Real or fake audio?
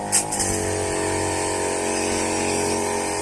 real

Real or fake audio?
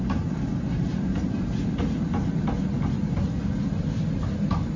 real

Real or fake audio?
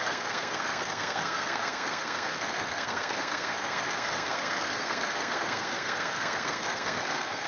fake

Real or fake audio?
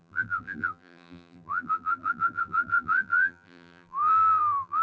fake